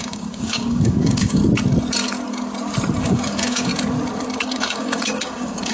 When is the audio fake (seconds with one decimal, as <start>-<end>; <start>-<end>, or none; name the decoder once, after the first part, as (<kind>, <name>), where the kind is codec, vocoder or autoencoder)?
0.0-1.4 (codec, DAC); 3.0-3.7; 4.4-5.7